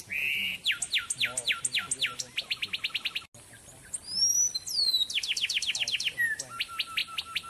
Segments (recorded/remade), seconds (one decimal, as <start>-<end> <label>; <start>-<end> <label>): 0.0-7.5 recorded